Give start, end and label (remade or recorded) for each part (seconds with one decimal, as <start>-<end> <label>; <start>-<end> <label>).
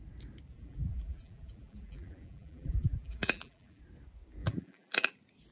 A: 0.0-0.5 recorded; 0.5-3.8 remade; 3.8-4.4 recorded; 4.4-5.1 remade; 5.1-5.5 recorded